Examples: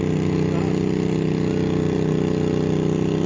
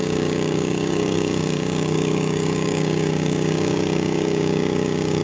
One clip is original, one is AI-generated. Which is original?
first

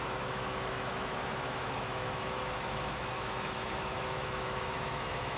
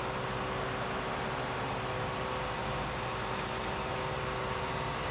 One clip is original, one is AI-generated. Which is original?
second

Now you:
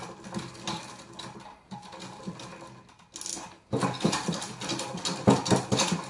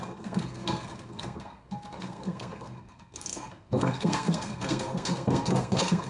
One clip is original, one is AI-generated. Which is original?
first